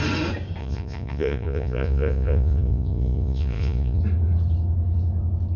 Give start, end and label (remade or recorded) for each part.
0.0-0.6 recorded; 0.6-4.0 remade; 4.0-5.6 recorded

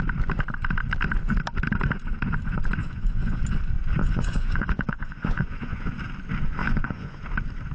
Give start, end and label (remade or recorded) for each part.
0.0-2.8 recorded; 2.8-3.4 remade; 3.4-4.0 recorded; 4.0-5.9 remade; 5.9-6.6 recorded; 6.6-7.2 remade; 7.2-7.7 recorded

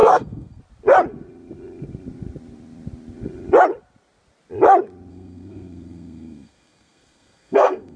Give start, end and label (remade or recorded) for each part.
0.0-0.6 remade; 0.6-5.1 recorded; 5.1-8.0 remade

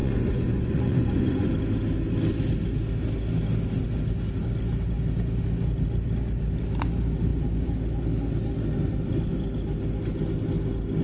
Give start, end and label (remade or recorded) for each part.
0.0-1.5 remade; 1.5-11.0 recorded

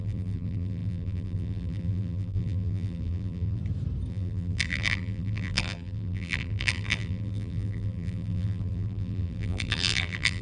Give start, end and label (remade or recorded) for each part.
0.0-3.6 remade; 3.6-4.1 recorded; 4.1-10.4 remade